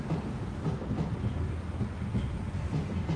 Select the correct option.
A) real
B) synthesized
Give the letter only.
A